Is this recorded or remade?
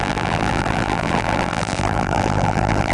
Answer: remade